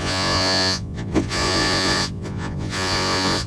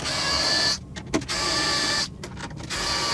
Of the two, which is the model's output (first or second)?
first